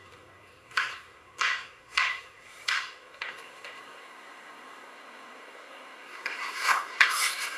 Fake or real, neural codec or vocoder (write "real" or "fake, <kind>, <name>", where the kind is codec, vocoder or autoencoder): fake, codec, SNAC